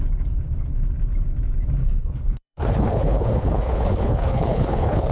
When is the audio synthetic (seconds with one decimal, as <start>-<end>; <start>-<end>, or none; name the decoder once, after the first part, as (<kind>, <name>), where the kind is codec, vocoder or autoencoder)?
1.8-5.1 (codec, HILCodec)